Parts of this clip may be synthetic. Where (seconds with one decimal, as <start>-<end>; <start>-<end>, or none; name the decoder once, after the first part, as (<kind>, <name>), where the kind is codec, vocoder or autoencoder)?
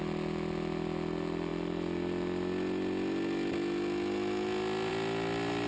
none